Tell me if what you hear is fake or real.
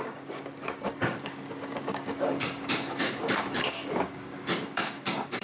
fake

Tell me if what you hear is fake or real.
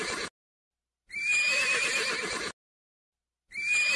real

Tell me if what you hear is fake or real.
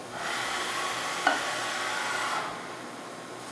real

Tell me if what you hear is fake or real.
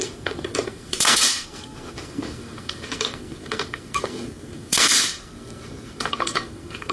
fake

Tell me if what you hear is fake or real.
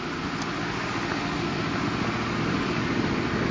real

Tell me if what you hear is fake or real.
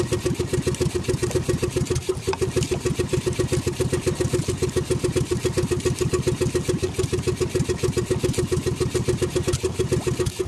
real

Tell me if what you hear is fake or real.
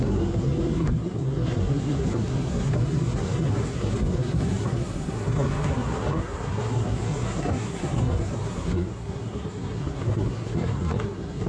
fake